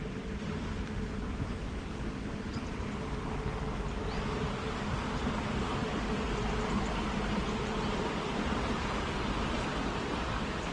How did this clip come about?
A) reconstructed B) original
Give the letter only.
B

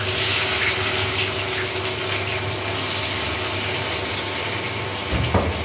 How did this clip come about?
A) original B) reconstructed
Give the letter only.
A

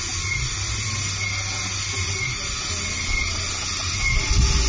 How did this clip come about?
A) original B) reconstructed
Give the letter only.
A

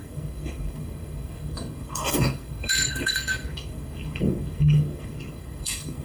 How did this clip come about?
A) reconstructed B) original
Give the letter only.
A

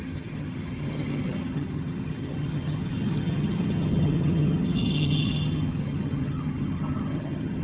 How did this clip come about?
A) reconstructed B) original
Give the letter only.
A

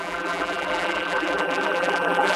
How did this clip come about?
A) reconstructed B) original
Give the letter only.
A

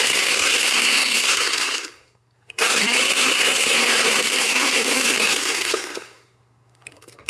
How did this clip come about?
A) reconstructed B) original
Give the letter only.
A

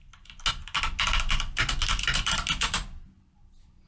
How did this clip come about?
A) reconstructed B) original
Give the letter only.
B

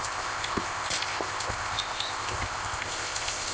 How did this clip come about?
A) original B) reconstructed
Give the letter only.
B